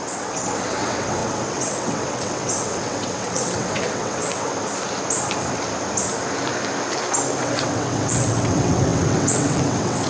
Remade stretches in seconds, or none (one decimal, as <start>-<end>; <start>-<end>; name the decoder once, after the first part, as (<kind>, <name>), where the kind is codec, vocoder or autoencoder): 0.0-4.5 (vocoder, WaveNeXt); 7.4-10.1